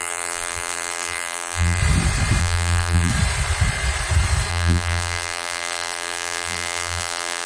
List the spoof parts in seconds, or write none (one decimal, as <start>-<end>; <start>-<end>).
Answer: 0.0-1.8; 2.4-3.1; 4.5-7.5